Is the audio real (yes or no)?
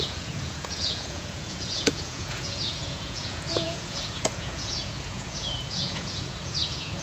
no